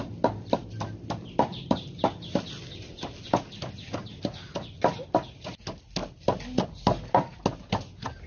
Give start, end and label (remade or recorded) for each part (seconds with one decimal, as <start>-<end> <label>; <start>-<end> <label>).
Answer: 0.0-8.3 recorded